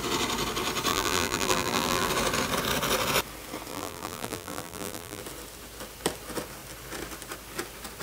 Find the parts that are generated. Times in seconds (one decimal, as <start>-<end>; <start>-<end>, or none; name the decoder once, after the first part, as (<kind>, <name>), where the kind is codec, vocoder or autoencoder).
0.9-2.1 (vocoder, BigVGAN v2); 3.7-5.2